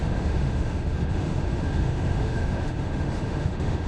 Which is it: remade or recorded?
remade